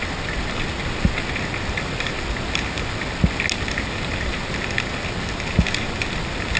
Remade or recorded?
recorded